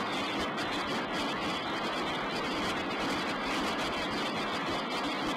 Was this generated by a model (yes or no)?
no